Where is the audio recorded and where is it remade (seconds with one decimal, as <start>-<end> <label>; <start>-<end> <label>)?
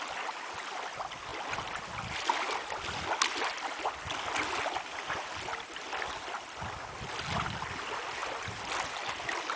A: 0.0-9.6 recorded